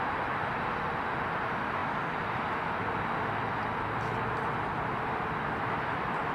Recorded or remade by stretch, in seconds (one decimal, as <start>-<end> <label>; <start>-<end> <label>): 0.0-6.3 recorded